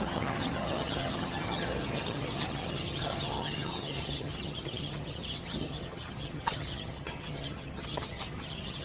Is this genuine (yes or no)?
no